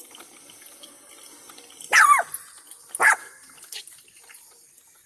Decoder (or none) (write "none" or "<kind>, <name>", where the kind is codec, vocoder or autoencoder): none